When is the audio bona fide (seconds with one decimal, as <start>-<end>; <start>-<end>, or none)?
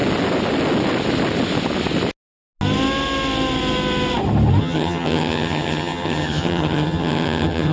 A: 0.0-4.6